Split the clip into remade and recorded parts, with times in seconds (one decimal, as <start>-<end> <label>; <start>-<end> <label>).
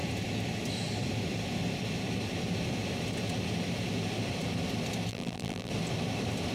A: 0.0-5.1 recorded; 5.1-5.7 remade; 5.7-6.5 recorded